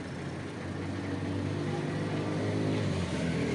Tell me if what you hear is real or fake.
real